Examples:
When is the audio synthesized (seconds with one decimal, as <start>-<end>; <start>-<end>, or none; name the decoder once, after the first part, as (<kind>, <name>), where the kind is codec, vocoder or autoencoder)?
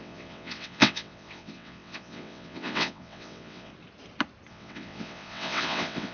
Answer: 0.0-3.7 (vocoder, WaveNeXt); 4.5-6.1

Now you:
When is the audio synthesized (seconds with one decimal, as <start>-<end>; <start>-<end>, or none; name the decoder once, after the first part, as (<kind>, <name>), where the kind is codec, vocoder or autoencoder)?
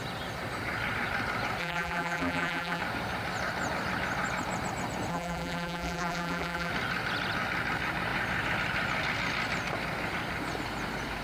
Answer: 1.6-2.8 (vocoder, BigVGAN v2); 5.1-6.7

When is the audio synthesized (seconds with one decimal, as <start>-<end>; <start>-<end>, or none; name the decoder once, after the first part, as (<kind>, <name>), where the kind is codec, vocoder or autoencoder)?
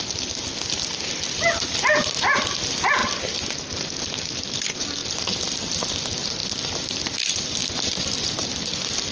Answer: none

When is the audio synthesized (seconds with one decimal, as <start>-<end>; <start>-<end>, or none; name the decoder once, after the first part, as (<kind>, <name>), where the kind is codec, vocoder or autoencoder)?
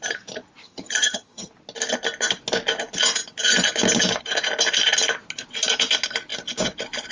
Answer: 0.6-1.5 (vocoder, HiFi-GAN)